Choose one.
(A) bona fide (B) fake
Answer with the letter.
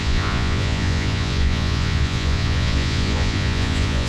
B